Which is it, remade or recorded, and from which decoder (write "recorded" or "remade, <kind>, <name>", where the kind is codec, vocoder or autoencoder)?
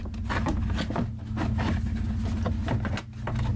recorded